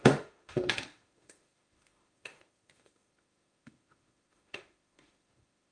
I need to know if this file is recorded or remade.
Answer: remade